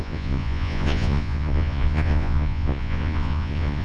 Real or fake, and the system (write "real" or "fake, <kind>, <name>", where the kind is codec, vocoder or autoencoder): fake, vocoder, Vocos